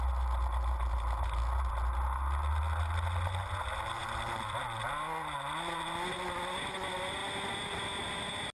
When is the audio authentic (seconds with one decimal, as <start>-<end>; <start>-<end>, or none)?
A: 0.0-4.0; 4.8-8.5